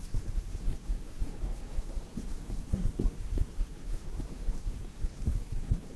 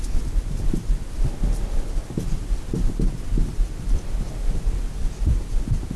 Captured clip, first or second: second